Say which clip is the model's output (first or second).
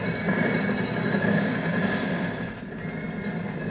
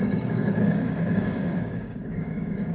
second